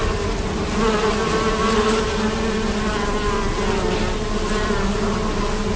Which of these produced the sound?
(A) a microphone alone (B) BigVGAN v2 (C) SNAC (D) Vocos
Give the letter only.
A